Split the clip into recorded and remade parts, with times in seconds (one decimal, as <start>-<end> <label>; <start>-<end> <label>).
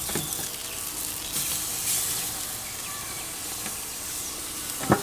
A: 0.0-5.0 recorded